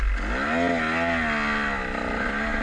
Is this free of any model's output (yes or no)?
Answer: yes